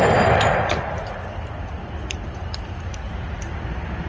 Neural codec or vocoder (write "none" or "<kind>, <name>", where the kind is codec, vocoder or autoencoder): vocoder, BigVGAN v2